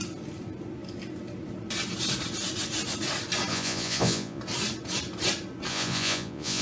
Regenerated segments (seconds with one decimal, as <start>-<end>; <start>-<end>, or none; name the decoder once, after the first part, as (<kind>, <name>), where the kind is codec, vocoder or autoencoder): 3.5-4.4 (vocoder, Vocos); 5.7-6.6